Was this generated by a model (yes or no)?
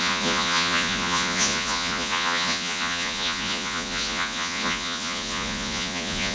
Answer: yes